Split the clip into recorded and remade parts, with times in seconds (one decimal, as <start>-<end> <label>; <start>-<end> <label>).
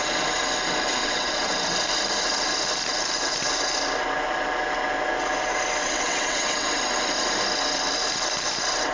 0.0-1.0 recorded; 1.0-1.5 remade; 1.5-5.8 recorded; 5.8-6.7 remade; 6.7-8.9 recorded